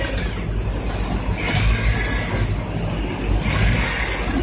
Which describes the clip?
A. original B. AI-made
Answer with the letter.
A